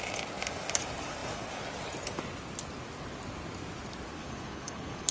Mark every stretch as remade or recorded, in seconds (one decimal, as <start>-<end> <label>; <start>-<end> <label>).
0.0-4.2 recorded; 4.2-5.1 remade

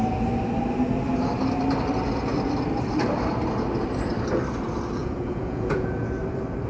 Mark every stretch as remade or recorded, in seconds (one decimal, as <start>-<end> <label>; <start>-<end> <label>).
0.0-5.0 recorded; 5.0-6.2 remade; 6.2-6.7 recorded

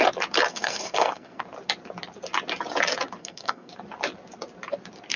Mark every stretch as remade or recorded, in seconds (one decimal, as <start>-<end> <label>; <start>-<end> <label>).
0.0-0.5 recorded; 0.5-1.4 remade; 1.4-3.2 recorded; 3.2-3.7 remade; 3.7-5.2 recorded

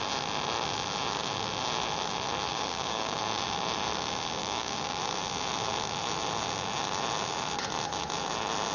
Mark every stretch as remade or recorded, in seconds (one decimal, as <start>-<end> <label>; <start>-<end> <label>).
0.0-2.5 recorded; 2.5-3.2 remade; 3.2-4.4 recorded; 4.4-5.0 remade; 5.0-8.7 recorded

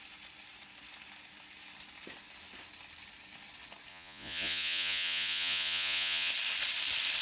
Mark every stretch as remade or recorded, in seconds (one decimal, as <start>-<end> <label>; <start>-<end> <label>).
0.0-3.9 recorded; 3.9-6.3 remade; 6.3-7.2 recorded

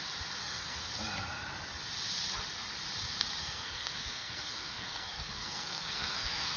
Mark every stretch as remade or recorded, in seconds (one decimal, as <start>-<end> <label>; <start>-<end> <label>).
0.0-0.4 recorded; 0.4-0.9 remade; 0.9-3.4 recorded; 3.4-6.6 remade

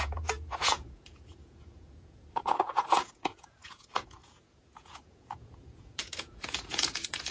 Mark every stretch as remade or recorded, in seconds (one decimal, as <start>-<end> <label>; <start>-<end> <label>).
0.0-7.3 remade